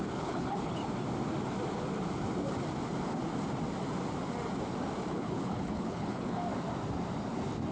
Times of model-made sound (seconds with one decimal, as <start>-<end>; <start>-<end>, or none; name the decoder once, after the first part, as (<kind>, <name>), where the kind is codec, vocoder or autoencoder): 0.0-0.8 (codec, HILCodec); 5.1-6.4